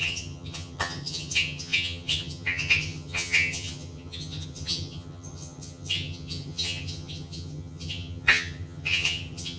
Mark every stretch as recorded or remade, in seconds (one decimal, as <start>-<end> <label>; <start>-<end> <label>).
0.0-9.6 remade